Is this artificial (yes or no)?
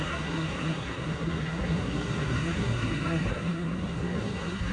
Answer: yes